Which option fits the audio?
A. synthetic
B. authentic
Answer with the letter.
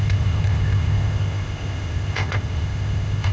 A